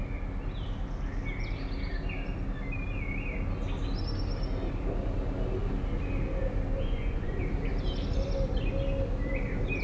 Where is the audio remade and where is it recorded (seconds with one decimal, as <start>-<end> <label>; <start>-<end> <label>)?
0.0-6.7 recorded; 6.7-7.4 remade; 7.4-9.8 recorded